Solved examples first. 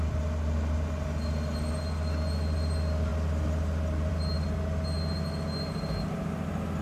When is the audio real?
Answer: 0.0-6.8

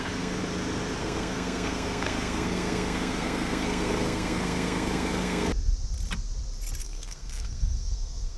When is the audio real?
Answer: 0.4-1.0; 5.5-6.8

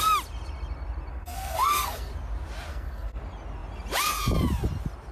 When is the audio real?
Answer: 0.0-1.1; 2.1-2.7; 3.2-5.1

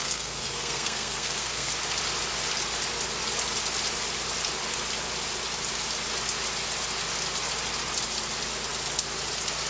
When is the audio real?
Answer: 1.7-9.7

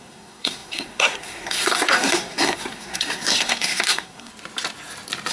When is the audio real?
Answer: 4.3-5.3